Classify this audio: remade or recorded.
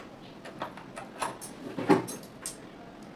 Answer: recorded